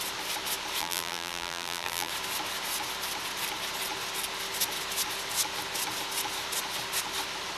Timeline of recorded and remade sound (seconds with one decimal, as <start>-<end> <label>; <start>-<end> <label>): 0.0-0.8 recorded; 0.8-2.1 remade; 2.1-7.6 recorded